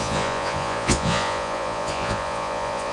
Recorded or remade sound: remade